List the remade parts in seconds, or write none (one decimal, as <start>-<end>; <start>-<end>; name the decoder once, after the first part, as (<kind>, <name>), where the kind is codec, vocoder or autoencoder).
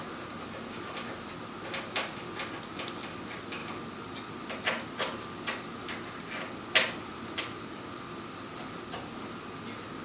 none